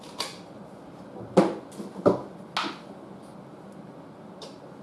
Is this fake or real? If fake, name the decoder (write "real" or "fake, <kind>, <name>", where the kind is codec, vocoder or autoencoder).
real